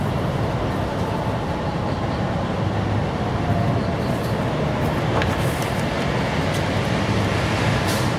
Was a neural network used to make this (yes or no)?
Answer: no